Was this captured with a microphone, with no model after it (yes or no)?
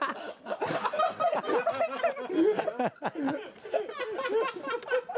yes